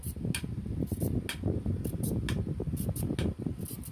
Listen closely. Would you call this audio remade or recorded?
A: recorded